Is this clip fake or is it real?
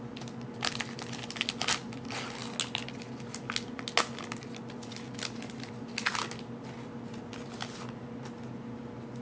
real